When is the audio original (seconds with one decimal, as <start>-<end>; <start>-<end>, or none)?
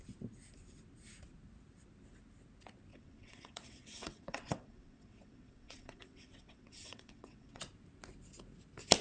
0.0-2.9; 7.6-9.0